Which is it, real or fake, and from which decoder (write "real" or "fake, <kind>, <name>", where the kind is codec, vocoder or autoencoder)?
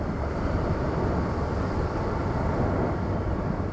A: real